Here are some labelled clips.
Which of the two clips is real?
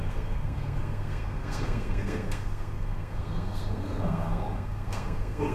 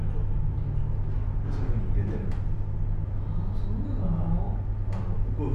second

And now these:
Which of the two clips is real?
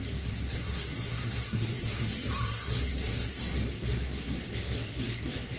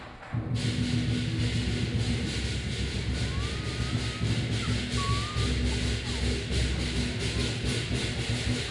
second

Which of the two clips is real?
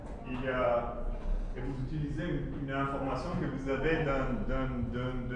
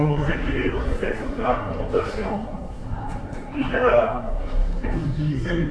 first